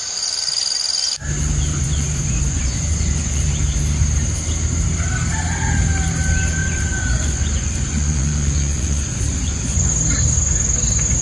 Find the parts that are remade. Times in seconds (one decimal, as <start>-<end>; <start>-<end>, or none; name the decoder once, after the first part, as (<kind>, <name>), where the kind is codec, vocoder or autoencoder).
1.7-3.4 (vocoder, Vocos); 6.6-9.9